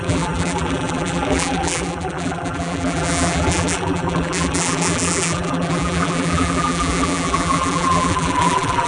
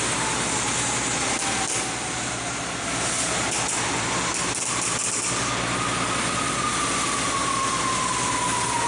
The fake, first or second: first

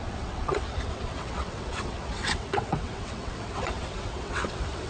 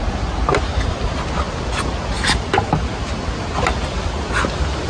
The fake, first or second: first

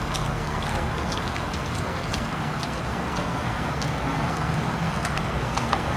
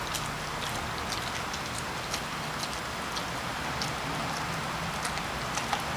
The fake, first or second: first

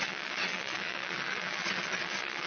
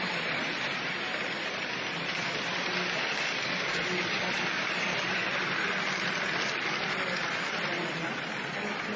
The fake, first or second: first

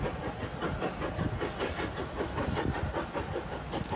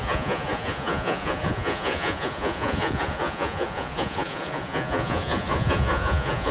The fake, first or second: second